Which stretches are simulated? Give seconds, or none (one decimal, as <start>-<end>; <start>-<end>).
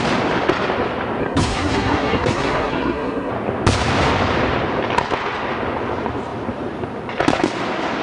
1.2-3.3